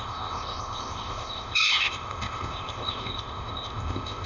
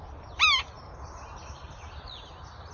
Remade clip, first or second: first